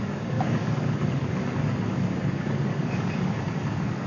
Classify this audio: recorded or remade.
remade